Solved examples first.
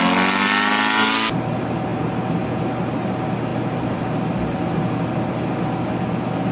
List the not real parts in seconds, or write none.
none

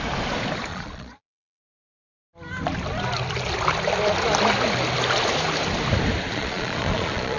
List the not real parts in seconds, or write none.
0.7-1.6; 6.3-7.4

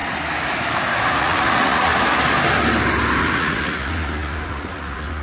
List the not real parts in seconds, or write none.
1.2-1.9; 3.2-5.2

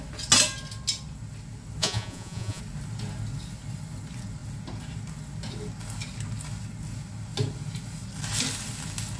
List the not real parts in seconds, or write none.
1.8-2.6

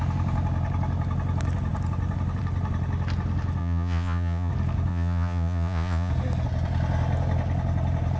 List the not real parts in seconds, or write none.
3.6-4.5; 4.9-6.1